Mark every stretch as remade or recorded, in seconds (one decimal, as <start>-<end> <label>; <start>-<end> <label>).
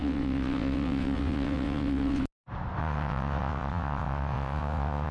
0.0-2.2 remade; 2.2-2.8 recorded; 2.8-5.1 remade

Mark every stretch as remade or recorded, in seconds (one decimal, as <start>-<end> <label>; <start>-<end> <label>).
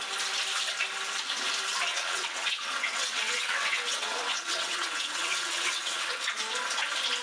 0.0-1.9 recorded; 1.9-6.2 remade; 6.2-7.2 recorded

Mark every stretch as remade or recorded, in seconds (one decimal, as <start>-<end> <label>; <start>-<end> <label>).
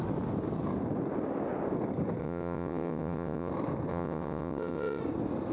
0.0-2.2 recorded; 2.2-3.5 remade; 3.5-3.9 recorded; 3.9-5.0 remade; 5.0-5.5 recorded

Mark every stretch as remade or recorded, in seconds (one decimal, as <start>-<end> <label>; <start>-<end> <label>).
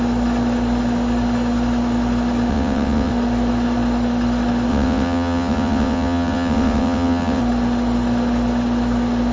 0.0-2.5 recorded; 2.5-3.1 remade; 3.1-4.7 recorded; 4.7-7.4 remade; 7.4-9.3 recorded